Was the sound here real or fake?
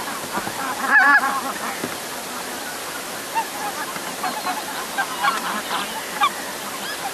real